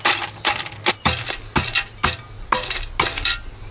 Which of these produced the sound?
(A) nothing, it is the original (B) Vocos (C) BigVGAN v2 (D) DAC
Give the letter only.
A